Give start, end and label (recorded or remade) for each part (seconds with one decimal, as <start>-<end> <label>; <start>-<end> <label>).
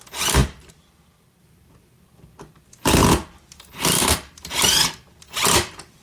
0.0-6.0 remade